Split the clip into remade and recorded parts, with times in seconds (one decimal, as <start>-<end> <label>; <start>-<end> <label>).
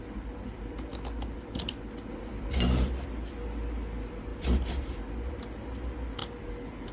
0.0-6.9 recorded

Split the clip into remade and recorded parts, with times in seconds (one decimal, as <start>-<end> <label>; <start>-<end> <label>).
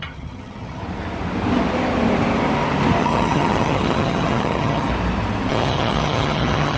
0.0-0.8 remade; 0.8-3.0 recorded; 3.0-4.9 remade; 4.9-5.5 recorded; 5.5-6.8 remade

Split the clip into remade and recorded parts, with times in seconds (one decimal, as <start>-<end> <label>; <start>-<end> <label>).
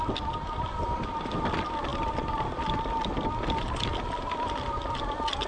0.0-5.5 recorded